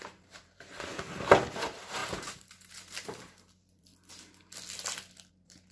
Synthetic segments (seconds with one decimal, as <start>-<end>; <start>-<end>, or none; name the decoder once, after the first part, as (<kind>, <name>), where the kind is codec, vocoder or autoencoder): 0.0-0.9 (vocoder, BigVGAN v2); 1.5-3.9; 5.3-5.7